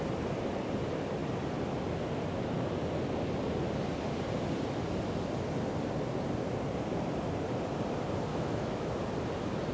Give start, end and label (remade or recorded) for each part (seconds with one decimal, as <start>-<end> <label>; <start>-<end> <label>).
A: 0.0-8.3 recorded; 8.3-8.9 remade; 8.9-9.7 recorded

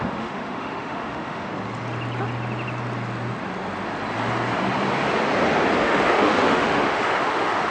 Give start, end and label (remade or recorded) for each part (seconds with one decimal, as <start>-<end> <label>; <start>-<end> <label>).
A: 0.0-1.5 remade; 1.5-5.8 recorded; 5.8-7.7 remade

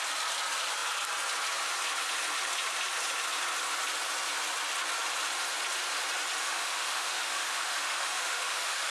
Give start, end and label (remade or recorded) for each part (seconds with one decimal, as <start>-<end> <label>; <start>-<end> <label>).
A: 0.0-6.4 recorded; 6.4-8.9 remade

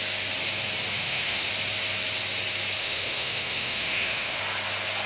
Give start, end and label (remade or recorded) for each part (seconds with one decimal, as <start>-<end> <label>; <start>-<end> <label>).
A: 0.0-0.9 recorded; 0.9-1.5 remade; 1.5-2.8 recorded; 2.8-4.4 remade; 4.4-5.1 recorded

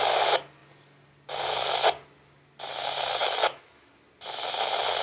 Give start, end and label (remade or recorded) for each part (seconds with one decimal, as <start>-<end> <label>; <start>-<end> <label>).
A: 0.0-3.2 recorded; 3.2-3.9 remade; 3.9-5.0 recorded

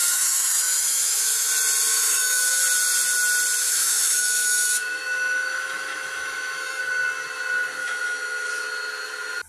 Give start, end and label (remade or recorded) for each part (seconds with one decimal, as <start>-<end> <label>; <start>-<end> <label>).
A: 0.0-1.5 remade; 1.5-1.9 recorded; 1.9-2.6 remade; 2.6-3.6 recorded; 3.6-6.8 remade; 6.8-7.8 recorded; 7.8-8.5 remade; 8.5-9.5 recorded